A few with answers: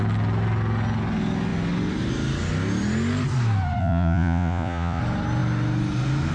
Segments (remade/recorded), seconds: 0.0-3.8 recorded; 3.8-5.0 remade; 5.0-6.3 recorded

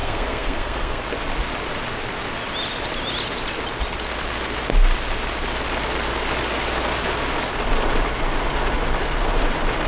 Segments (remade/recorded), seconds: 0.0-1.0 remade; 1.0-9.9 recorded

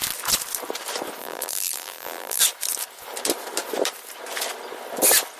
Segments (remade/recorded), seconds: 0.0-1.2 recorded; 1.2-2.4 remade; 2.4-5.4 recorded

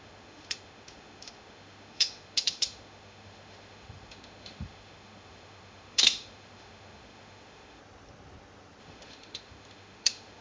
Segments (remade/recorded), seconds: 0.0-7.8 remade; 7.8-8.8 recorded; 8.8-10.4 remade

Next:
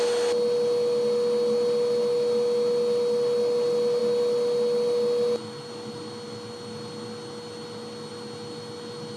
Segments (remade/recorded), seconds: 0.0-9.2 recorded

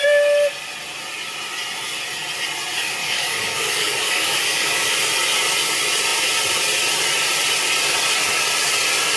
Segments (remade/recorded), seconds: 0.0-3.0 recorded; 3.0-4.9 remade; 4.9-9.2 recorded

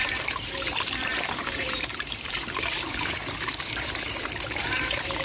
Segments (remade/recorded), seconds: 0.0-5.2 remade

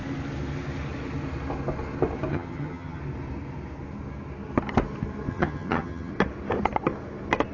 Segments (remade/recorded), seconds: 0.0-2.3 recorded; 2.3-3.0 remade; 3.0-5.3 recorded; 5.3-6.1 remade; 6.1-7.5 recorded